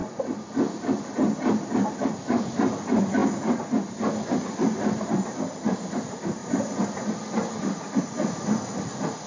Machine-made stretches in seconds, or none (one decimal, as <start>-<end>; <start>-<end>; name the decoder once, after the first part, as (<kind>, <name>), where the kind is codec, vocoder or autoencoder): 6.4-8.8 (vocoder, BigVGAN v2)